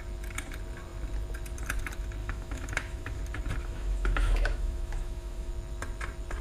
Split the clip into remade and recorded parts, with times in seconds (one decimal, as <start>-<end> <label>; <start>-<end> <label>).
0.0-2.2 recorded; 2.2-3.2 remade; 3.2-3.6 recorded; 3.6-5.5 remade; 5.5-6.4 recorded